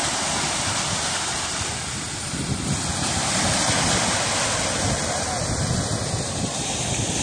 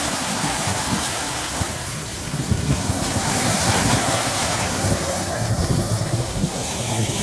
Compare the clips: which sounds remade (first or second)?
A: second